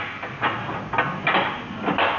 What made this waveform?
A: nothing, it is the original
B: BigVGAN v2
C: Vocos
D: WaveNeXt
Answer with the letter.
A